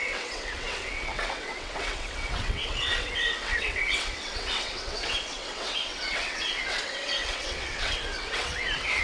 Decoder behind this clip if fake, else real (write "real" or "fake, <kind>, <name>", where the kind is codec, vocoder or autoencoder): fake, vocoder, WaveNeXt